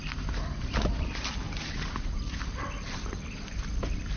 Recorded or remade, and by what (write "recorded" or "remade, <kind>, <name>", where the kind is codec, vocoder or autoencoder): recorded